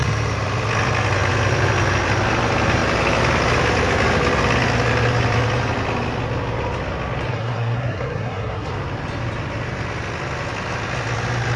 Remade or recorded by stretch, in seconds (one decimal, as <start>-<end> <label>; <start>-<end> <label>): 0.0-7.3 recorded; 7.3-8.7 remade; 8.7-11.6 recorded